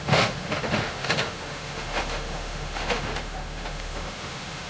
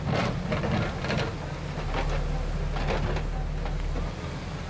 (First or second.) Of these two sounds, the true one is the second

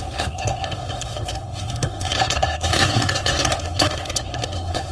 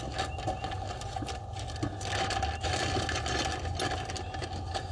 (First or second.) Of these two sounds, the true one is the second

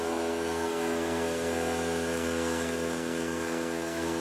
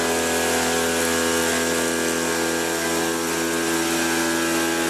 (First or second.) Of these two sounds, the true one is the second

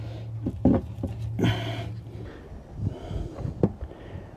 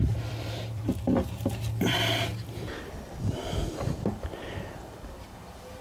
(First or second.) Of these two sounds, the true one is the first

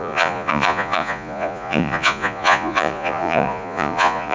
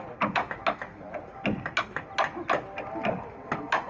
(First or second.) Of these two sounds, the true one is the second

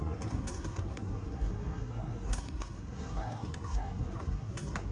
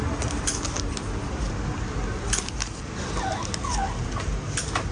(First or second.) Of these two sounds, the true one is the second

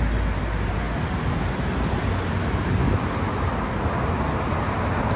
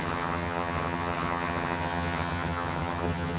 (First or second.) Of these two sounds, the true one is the first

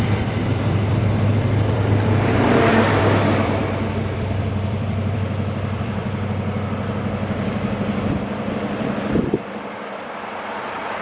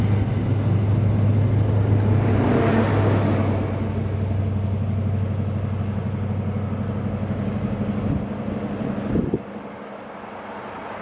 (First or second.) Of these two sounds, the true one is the second